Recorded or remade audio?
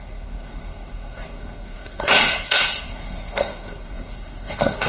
remade